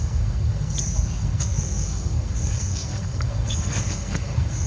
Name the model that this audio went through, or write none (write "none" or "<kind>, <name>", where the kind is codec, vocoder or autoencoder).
codec, SNAC